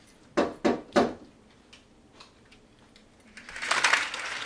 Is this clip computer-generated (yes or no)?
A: no